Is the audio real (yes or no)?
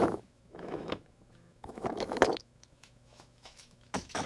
no